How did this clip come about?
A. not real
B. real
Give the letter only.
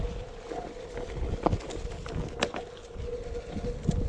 B